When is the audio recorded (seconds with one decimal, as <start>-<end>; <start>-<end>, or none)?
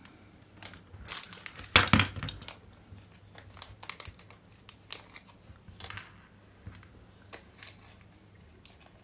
0.0-9.0